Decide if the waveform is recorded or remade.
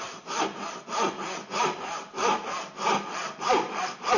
recorded